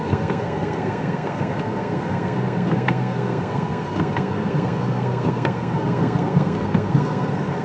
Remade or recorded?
remade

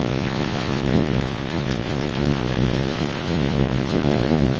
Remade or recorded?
remade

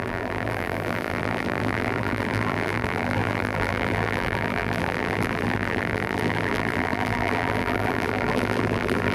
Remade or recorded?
remade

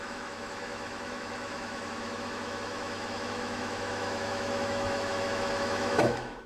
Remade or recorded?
remade